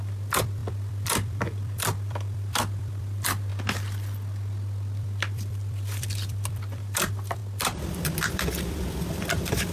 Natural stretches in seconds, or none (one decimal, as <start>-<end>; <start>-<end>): 3.5-5.0; 7.4-8.2